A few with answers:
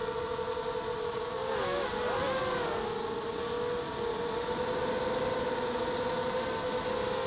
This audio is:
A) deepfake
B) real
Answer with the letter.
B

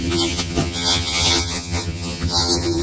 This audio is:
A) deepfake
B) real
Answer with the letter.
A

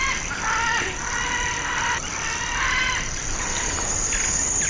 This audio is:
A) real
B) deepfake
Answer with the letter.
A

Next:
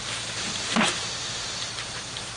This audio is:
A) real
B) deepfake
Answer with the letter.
B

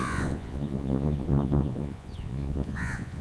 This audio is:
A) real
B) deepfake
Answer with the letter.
B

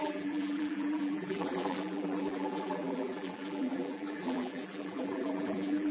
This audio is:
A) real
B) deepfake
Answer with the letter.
B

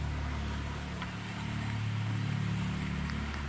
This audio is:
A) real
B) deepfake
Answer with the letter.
A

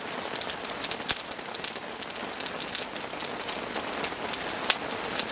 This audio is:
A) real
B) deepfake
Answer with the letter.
A